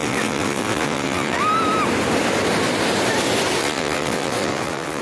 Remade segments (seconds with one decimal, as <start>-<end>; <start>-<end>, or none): 0.0-1.4; 3.6-5.0